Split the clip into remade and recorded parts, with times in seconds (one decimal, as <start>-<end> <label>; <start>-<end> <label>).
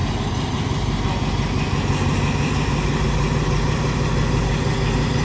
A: 0.0-5.2 recorded